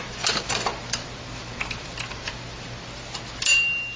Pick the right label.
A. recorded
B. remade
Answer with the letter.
A